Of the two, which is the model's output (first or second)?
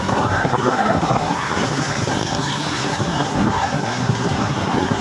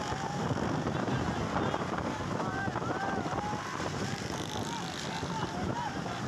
first